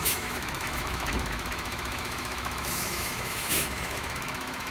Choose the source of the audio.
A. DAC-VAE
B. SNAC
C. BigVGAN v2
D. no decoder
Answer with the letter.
A